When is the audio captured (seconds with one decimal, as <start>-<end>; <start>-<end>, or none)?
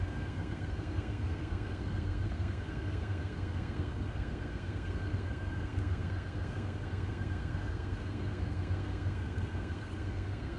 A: none